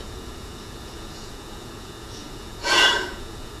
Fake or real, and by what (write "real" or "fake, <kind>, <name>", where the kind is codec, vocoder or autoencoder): fake, vocoder, Vocos